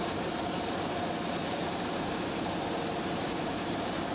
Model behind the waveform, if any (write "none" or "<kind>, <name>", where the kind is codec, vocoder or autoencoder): vocoder, BigVGAN v2